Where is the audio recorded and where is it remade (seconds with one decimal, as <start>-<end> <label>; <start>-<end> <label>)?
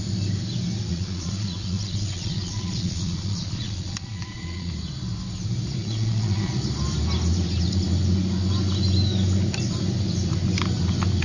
0.0-0.9 recorded; 0.9-4.7 remade; 4.7-5.8 recorded; 5.8-6.5 remade; 6.5-11.2 recorded